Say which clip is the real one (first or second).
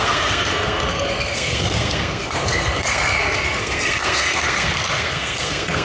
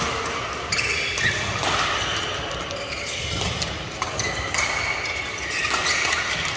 second